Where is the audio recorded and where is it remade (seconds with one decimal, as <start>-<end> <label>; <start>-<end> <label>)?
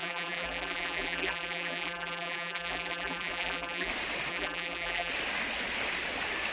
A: 0.0-3.9 remade; 3.9-4.3 recorded; 4.3-5.1 remade; 5.1-6.5 recorded